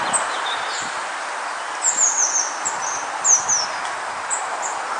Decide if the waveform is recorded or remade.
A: recorded